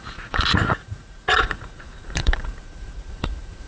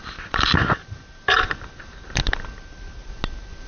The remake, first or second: first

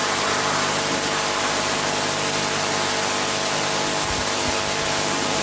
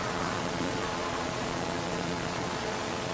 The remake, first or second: second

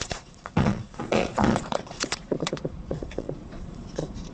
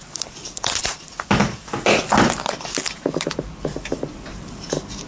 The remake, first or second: first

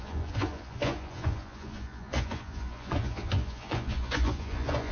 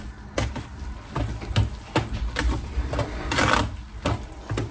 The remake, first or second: first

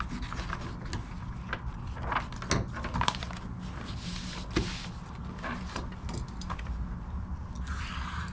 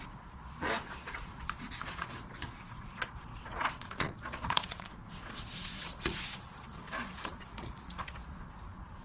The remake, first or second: second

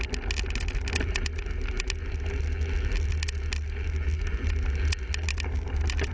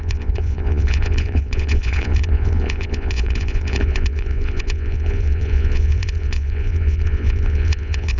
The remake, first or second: second